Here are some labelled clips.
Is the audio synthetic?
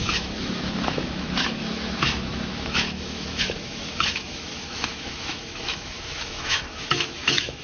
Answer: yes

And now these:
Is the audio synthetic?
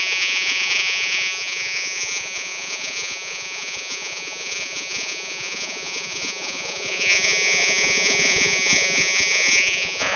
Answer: yes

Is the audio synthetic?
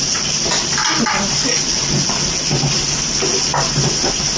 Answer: no